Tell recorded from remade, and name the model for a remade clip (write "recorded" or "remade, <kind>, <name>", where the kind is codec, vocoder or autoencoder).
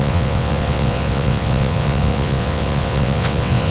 remade, vocoder, WaveNeXt